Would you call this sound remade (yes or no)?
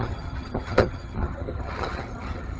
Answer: yes